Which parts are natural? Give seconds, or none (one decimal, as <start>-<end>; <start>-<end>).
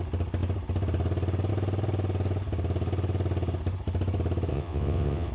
0.0-4.5